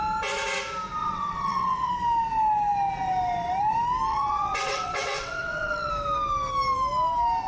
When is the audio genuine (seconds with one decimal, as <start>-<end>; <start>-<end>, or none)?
0.0-1.0; 1.9-4.1; 5.9-7.5